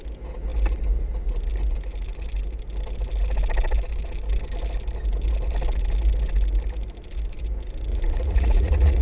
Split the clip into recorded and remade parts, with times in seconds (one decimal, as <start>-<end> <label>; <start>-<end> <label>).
0.0-7.9 recorded; 7.9-9.0 remade